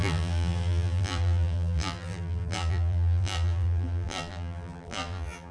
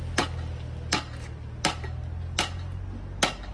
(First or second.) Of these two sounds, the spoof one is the first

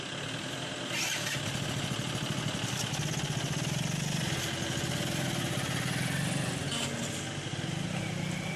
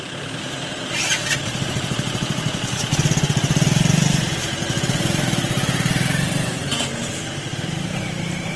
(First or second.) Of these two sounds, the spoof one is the second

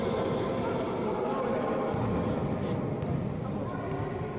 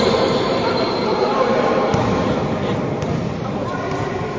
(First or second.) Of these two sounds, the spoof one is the second